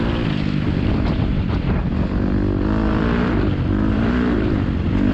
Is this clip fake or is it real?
fake